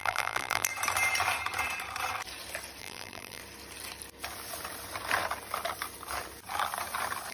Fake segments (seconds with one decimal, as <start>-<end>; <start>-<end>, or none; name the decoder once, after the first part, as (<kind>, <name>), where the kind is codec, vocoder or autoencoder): 0.0-0.7 (vocoder, BigVGAN v2); 2.8-3.4